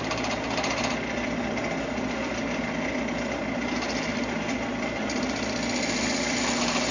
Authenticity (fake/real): real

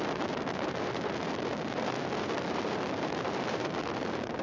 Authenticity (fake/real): fake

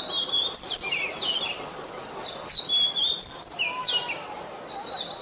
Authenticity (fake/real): real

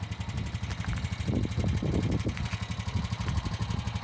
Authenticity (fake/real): real